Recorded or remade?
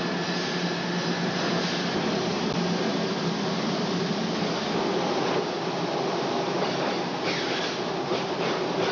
recorded